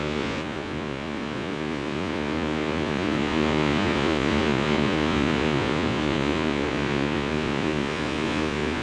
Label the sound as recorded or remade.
remade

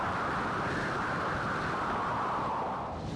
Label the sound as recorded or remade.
recorded